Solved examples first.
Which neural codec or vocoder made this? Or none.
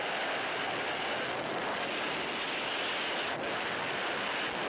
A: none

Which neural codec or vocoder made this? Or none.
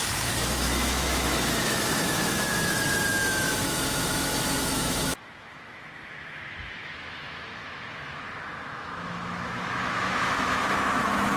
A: autoencoder, DAC-VAE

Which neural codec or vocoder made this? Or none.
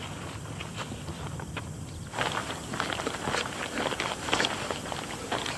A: none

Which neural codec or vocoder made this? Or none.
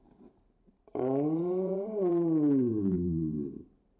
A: vocoder, BigVGAN v2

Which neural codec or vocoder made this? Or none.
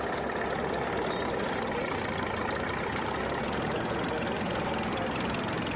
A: none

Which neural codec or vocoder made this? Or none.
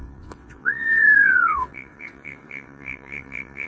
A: vocoder, WaveNeXt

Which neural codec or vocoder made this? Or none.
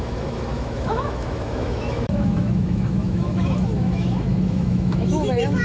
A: autoencoder, DAC-VAE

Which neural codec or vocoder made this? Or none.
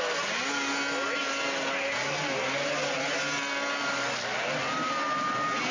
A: none